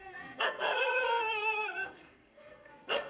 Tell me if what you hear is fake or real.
fake